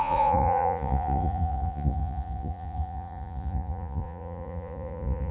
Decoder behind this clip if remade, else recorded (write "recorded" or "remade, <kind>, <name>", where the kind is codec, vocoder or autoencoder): remade, vocoder, Vocos